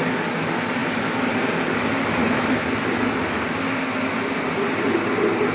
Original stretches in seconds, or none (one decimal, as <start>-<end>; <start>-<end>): 0.0-5.5